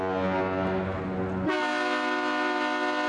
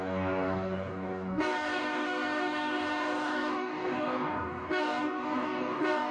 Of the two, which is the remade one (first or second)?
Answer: second